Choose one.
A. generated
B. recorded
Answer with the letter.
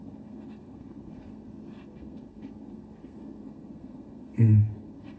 A